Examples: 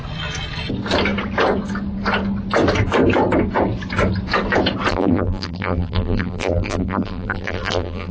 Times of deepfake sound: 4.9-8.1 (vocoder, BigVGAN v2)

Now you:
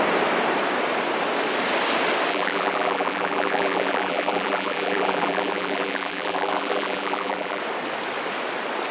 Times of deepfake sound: 2.3-7.6 (vocoder, BigVGAN v2)

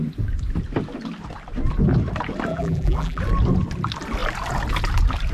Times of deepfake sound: 2.5-3.2 (vocoder, BigVGAN v2)

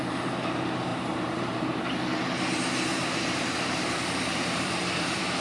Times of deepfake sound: 0.9-1.8 (vocoder, BigVGAN v2); 2.9-5.4

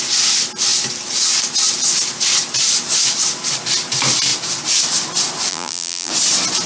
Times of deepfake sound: 5.5-6.1 (vocoder, BigVGAN v2)